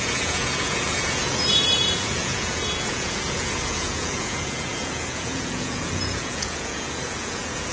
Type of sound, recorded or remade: remade